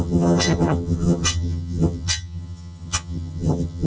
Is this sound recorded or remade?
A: remade